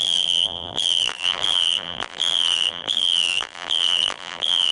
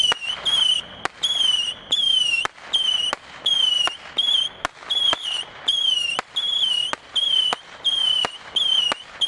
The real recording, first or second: second